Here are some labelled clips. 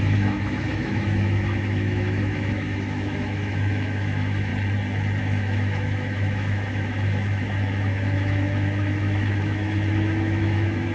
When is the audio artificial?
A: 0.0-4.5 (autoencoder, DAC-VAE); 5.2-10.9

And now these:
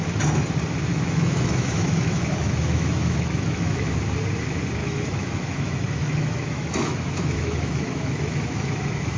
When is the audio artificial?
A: 0.9-3.9 (autoencoder, DAC-VAE); 4.8-9.2